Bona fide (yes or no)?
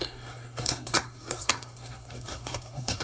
no